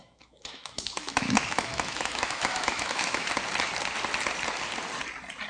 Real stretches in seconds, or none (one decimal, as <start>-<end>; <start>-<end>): 3.3-5.5